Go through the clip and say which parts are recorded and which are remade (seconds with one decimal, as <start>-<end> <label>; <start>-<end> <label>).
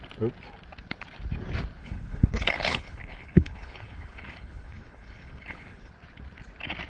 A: 0.0-1.8 recorded; 1.8-5.9 remade; 5.9-6.9 recorded